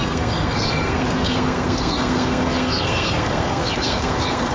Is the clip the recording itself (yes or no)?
no